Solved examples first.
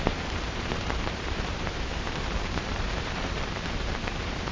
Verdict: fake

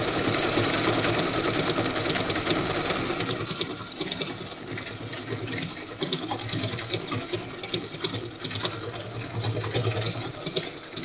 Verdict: fake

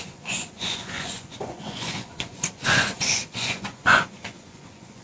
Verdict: fake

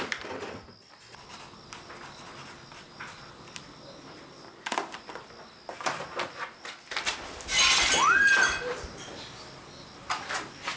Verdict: real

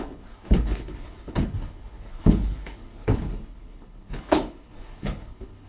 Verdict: fake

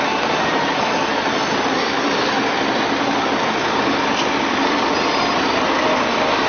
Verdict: real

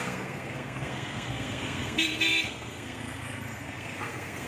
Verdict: fake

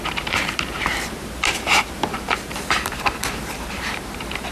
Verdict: fake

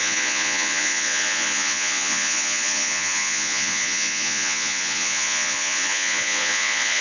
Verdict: fake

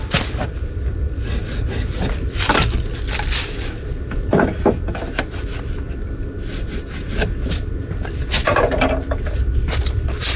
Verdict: real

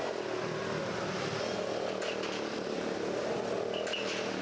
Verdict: real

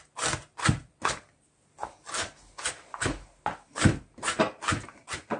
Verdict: real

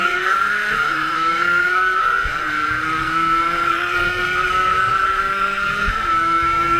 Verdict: fake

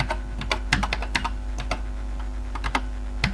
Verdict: real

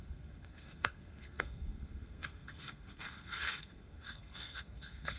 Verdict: fake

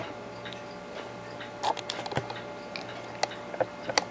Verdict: real